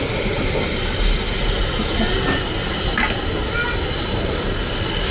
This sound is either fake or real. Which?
real